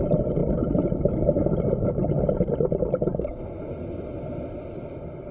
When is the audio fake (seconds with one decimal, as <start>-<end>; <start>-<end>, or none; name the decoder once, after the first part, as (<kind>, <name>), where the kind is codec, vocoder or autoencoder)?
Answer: none